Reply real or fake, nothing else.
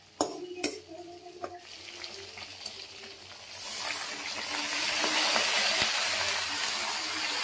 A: real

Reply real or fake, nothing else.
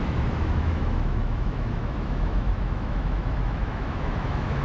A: fake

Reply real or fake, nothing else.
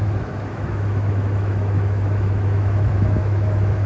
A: fake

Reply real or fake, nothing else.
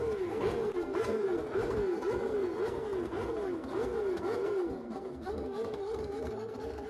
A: fake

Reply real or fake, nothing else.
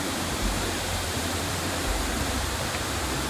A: fake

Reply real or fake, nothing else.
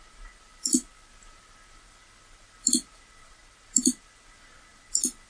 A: real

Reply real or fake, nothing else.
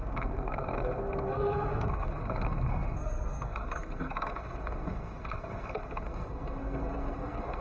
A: fake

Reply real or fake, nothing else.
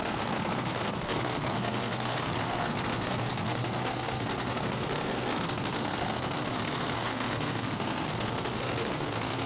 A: fake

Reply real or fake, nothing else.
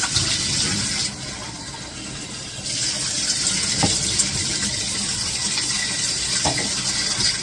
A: real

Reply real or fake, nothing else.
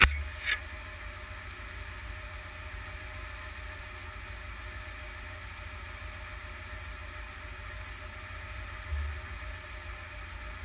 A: real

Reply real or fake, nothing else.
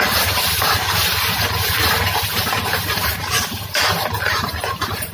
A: fake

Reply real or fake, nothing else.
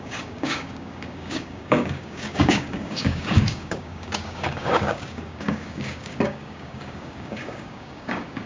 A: fake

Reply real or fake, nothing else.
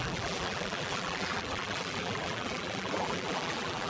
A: fake